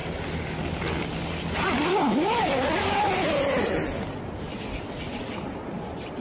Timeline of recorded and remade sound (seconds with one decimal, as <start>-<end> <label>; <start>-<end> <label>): 0.0-6.2 recorded

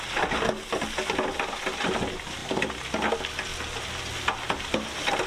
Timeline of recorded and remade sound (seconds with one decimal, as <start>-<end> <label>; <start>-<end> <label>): 0.0-3.5 recorded; 3.5-4.1 remade; 4.1-5.3 recorded

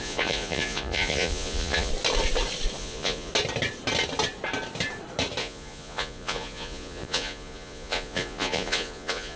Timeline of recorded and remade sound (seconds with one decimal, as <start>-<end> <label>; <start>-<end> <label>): 0.0-1.9 remade; 1.9-2.8 recorded; 2.8-3.3 remade; 3.3-5.4 recorded; 5.4-9.4 remade